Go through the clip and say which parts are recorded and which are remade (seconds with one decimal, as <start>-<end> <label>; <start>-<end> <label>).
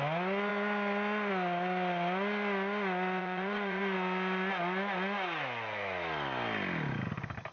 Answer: 0.0-3.2 recorded; 3.2-3.8 remade; 3.8-7.5 recorded